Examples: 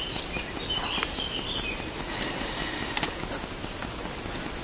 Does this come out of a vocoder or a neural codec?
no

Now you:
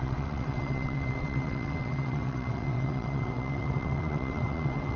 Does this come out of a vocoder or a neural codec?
yes